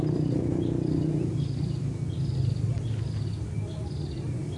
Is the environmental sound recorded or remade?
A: recorded